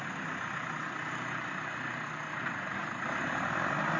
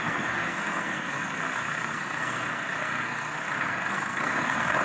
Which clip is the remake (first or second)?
second